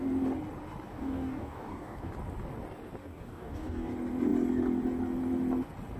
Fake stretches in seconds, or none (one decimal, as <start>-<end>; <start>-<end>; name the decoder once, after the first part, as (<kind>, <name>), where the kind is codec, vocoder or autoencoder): 0.9-2.1 (codec, DAC); 3.0-3.9

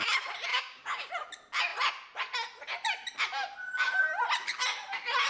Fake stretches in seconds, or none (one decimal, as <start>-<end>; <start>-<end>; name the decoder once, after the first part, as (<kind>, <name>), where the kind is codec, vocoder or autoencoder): 0.5-1.1 (codec, DAC)

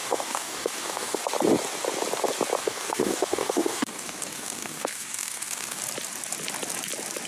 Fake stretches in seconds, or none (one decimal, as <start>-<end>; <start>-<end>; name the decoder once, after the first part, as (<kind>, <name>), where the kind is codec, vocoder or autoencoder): 0.0-1.2 (codec, DAC); 2.6-5.8

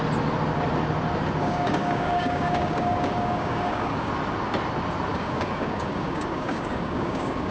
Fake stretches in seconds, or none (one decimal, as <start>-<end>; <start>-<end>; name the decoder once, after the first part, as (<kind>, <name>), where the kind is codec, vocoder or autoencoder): 1.4-4.1 (codec, DAC); 5.1-7.5

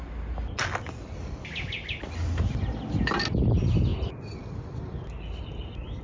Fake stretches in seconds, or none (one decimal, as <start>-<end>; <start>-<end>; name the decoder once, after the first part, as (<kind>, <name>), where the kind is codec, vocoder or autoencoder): none

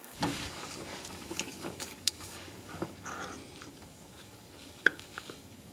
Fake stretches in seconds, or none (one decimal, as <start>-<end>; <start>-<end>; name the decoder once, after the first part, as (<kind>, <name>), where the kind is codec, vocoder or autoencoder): 0.0-3.2 (codec, DAC); 3.7-5.7

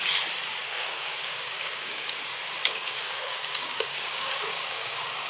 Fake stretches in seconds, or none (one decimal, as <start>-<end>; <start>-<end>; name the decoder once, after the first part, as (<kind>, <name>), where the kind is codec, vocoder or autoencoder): 0.6-2.2 (codec, DAC); 2.6-5.3